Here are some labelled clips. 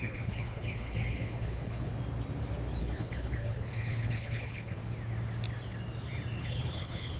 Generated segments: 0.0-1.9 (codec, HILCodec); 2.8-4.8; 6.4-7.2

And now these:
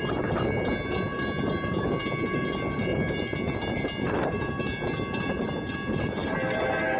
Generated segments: none

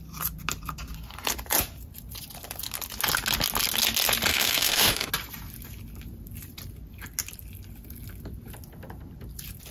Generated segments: 4.3-5.1 (autoencoder, DAC-VAE)

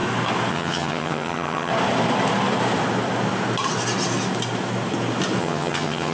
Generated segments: 0.5-1.7 (vocoder, HiFi-GAN); 5.4-6.1

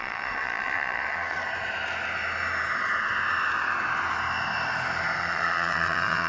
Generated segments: 0.0-1.4 (vocoder, Vocos); 5.2-6.3

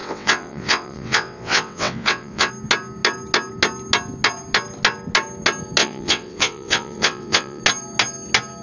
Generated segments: 0.0-2.5 (vocoder, WaveNeXt); 5.8-7.6